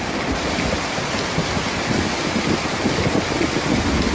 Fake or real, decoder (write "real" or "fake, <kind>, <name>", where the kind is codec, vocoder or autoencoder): real